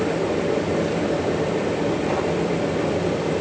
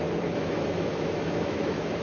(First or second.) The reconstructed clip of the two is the second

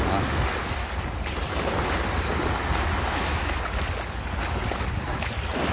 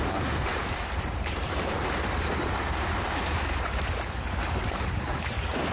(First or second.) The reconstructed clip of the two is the second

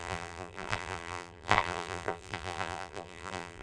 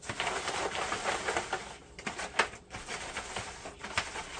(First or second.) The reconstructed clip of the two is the first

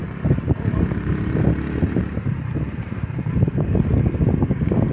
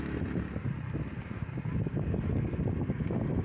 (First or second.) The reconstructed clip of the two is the first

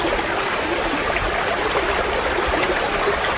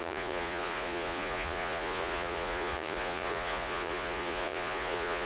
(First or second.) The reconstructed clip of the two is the second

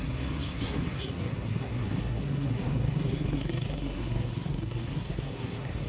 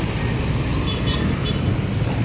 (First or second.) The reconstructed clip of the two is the first